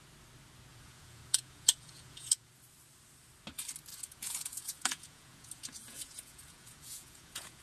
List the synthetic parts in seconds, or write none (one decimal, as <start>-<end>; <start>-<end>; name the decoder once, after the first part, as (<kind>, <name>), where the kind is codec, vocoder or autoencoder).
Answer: 0.7-2.5 (vocoder, Vocos); 3.9-7.6